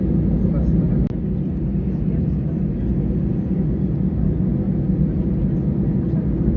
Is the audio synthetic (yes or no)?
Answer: no